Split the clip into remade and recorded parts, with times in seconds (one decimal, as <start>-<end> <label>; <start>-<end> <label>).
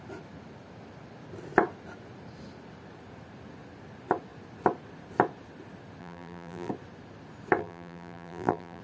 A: 0.0-6.0 recorded; 6.0-6.7 remade; 6.7-7.6 recorded; 7.6-8.8 remade